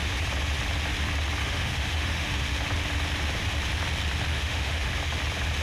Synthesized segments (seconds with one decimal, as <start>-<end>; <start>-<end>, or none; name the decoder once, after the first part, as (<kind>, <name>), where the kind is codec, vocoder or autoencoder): 1.4-2.3 (autoencoder, DAC-VAE); 4.3-4.9